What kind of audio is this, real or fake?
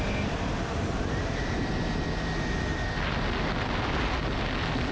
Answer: real